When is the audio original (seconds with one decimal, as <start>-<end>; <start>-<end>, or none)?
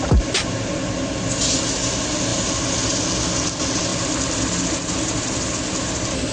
0.0-6.3